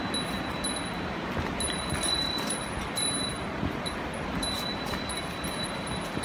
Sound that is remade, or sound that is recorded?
recorded